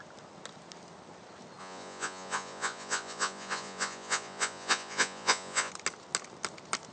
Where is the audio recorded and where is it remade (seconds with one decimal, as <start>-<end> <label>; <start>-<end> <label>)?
0.0-1.6 recorded; 1.6-5.7 remade; 5.7-6.9 recorded